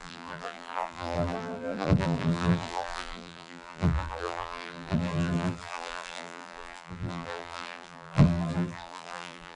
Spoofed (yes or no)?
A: yes